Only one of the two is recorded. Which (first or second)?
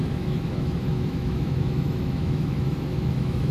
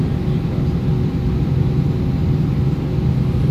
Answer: second